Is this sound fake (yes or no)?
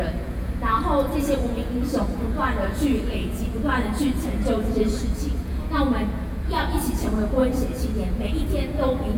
yes